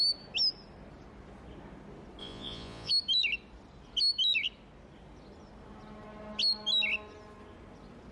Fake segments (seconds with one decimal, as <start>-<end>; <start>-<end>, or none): 2.2-2.9